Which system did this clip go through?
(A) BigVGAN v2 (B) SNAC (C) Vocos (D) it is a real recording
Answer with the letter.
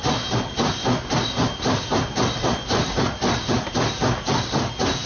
D